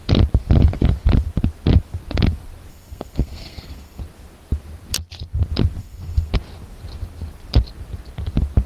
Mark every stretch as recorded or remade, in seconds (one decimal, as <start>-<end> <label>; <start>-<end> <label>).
0.0-2.7 recorded; 2.7-4.0 remade; 4.0-5.8 recorded; 5.8-6.3 remade; 6.3-8.7 recorded